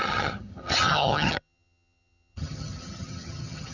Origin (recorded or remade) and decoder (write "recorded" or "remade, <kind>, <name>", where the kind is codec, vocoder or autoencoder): remade, vocoder, HiFi-GAN